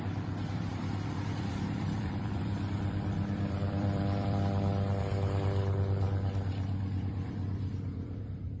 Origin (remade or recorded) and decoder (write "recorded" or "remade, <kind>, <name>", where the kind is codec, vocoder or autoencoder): remade, vocoder, BigVGAN v2